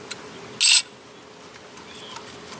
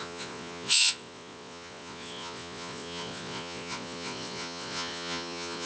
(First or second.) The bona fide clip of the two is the first